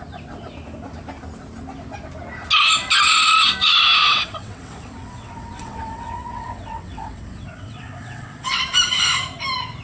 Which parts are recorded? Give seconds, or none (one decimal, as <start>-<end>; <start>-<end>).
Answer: 0.0-4.0; 8.6-9.8